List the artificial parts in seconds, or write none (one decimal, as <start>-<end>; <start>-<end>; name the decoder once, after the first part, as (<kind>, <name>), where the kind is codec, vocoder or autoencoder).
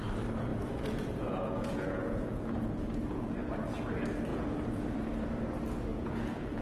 0.5-3.8 (vocoder, Vocos); 4.3-4.8; 5.9-6.6